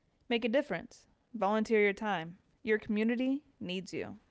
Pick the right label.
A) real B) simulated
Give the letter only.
A